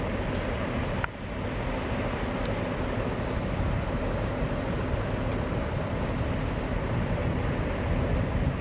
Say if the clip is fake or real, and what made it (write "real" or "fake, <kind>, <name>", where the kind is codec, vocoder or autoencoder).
real